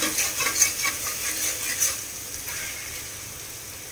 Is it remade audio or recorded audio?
recorded